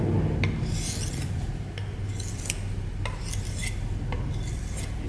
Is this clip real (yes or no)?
yes